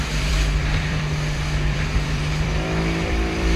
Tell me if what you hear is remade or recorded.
remade